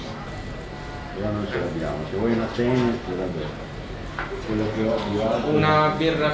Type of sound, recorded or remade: recorded